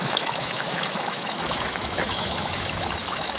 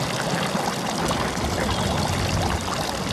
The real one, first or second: second